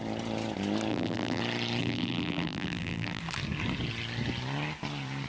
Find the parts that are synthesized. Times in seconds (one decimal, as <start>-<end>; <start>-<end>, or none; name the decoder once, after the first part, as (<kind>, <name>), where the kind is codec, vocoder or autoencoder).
0.9-1.4 (vocoder, BigVGAN v2); 1.8-3.2